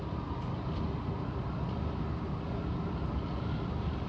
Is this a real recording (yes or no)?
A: yes